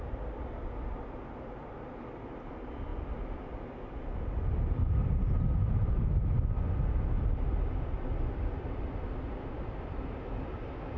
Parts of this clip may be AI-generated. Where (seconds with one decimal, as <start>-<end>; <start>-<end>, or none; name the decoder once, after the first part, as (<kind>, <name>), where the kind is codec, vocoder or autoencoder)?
none